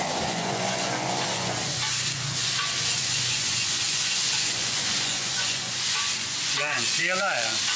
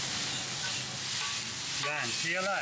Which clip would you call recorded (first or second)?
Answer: second